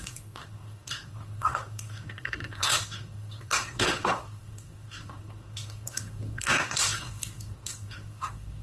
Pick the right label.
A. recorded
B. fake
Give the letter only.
B